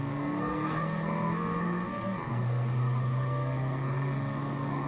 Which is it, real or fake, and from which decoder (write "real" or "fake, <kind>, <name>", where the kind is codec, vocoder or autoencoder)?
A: fake, codec, SNAC